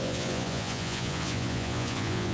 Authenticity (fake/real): fake